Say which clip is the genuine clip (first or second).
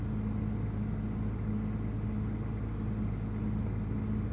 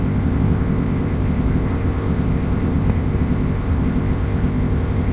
first